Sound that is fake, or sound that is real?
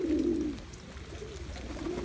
real